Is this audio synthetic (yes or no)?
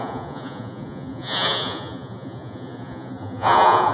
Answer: yes